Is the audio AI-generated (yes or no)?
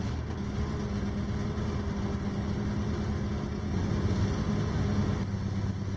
no